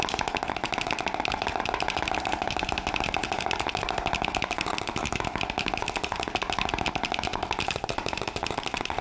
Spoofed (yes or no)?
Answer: no